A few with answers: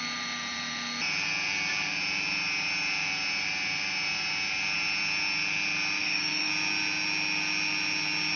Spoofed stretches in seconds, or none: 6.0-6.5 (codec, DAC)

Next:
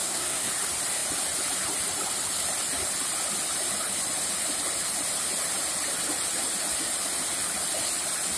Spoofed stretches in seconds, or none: 0.0-0.5 (codec, SNAC)

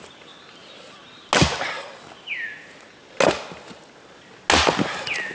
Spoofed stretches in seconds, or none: none

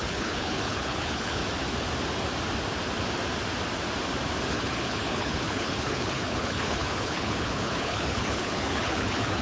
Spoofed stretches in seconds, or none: 0.0-1.4 (codec, HILCodec); 4.5-9.4

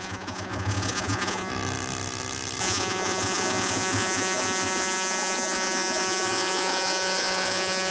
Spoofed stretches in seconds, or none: 0.0-1.5 (vocoder, Vocos); 2.6-7.9

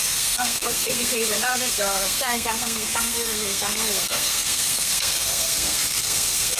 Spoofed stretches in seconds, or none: 0.0-6.6 (codec, SNAC)

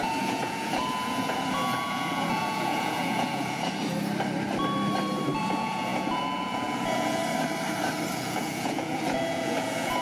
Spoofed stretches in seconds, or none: 0.0-3.8 (vocoder, Vocos); 5.4-7.2; 8.1-10.0

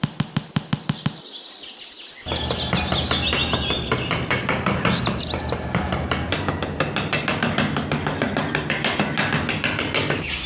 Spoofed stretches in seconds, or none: none